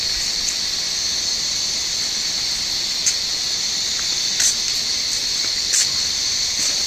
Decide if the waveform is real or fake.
real